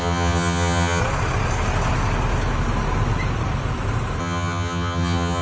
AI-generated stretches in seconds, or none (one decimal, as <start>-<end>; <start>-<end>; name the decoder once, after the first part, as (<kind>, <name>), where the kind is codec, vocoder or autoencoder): 0.0-1.0 (vocoder, HiFi-GAN); 4.2-5.4